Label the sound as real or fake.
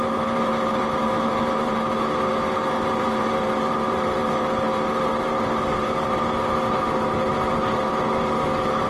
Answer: fake